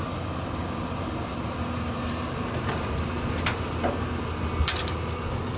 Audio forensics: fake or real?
real